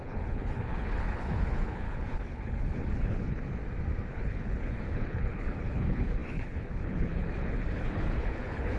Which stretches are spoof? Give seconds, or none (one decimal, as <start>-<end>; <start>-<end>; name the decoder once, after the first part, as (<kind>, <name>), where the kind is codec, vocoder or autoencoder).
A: 0.0-3.6 (codec, HILCodec); 4.1-8.8